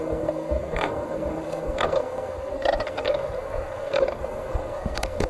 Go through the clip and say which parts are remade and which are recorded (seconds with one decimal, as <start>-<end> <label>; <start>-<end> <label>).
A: 0.0-5.3 remade